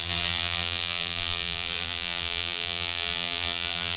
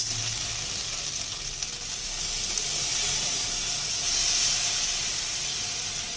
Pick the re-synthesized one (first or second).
first